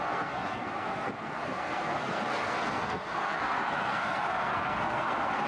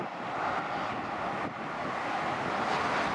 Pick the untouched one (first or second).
second